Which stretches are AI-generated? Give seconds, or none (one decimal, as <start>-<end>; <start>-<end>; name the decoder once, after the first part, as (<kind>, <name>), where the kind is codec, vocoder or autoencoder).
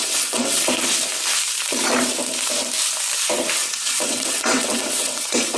0.0-0.7 (vocoder, WaveNeXt); 3.6-5.6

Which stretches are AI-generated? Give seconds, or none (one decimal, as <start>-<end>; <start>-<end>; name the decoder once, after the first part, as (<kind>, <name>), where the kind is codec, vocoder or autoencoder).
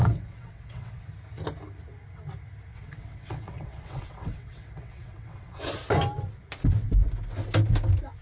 0.0-1.0 (vocoder, WaveNeXt); 2.7-5.7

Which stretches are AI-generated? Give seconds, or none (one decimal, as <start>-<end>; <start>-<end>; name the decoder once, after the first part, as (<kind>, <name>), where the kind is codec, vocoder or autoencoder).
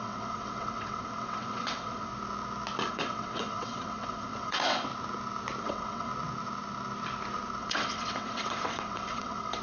0.0-2.1 (vocoder, WaveNeXt); 2.9-4.9; 5.6-6.1; 7.6-9.6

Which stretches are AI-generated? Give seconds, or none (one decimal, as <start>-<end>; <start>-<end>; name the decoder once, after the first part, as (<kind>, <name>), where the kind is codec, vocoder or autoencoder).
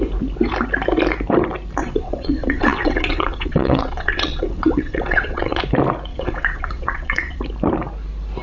1.8-5.6 (vocoder, WaveNeXt); 6.1-7.4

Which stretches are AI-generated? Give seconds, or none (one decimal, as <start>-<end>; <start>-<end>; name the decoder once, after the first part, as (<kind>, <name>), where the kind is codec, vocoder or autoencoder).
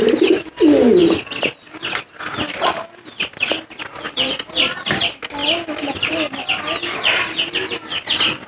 none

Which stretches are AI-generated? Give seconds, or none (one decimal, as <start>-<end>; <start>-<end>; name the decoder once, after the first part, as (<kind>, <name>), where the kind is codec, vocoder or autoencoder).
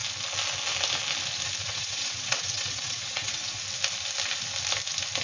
1.6-3.6 (vocoder, WaveNeXt)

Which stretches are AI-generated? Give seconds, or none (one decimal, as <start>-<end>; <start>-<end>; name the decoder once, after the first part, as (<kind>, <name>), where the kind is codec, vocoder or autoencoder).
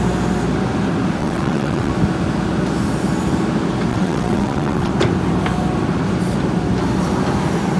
1.2-1.9 (vocoder, WaveNeXt); 3.9-4.9